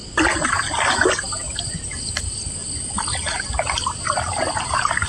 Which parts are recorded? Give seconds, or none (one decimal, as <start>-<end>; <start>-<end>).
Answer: 0.0-5.1